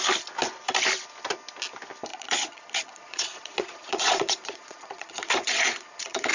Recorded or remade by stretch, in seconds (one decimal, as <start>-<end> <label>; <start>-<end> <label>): 0.0-2.1 recorded; 2.1-6.3 remade